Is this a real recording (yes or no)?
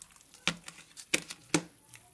yes